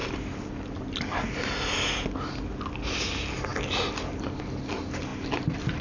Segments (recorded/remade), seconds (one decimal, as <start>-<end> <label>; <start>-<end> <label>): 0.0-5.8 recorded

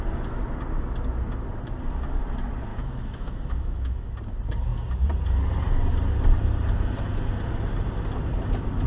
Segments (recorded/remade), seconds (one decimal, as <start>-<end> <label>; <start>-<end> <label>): 0.0-2.7 recorded; 2.7-4.1 remade; 4.1-8.9 recorded

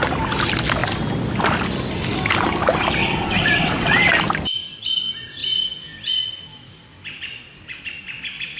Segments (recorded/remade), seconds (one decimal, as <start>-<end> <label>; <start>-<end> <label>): 0.0-3.0 recorded; 3.0-4.1 remade; 4.1-8.6 recorded

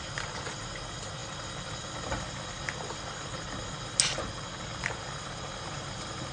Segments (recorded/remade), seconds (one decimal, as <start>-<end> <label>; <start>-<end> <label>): 0.0-6.3 recorded

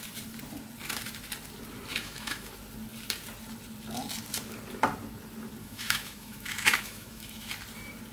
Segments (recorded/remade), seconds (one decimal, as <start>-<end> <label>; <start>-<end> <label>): 0.0-1.9 recorded; 1.9-2.5 remade; 2.5-5.6 recorded; 5.6-7.5 remade; 7.5-8.1 recorded

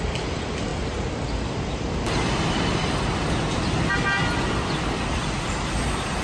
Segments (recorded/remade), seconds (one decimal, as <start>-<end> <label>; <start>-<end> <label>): 0.0-6.2 recorded